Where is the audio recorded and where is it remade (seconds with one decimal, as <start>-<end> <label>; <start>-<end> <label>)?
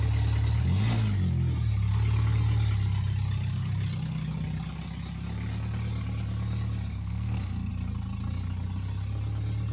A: 0.0-6.9 recorded; 6.9-7.7 remade; 7.7-9.7 recorded